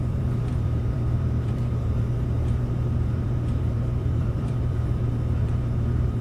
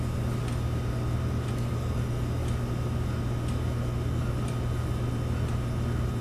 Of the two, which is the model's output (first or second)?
first